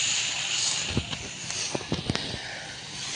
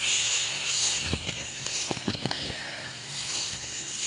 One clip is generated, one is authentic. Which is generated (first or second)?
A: second